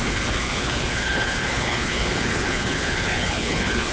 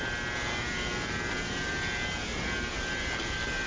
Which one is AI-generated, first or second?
first